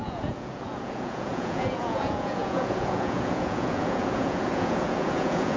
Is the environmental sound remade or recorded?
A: remade